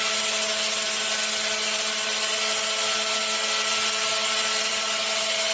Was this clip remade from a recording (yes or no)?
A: no